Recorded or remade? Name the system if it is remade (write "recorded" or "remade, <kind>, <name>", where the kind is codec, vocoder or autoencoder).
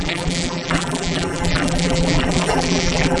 remade, vocoder, BigVGAN v2